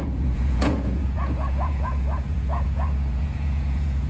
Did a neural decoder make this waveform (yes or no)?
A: yes